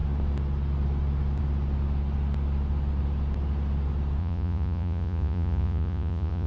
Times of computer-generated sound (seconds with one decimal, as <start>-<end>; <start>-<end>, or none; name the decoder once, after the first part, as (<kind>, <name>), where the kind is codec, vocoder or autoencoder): 4.2-6.5 (vocoder, Vocos)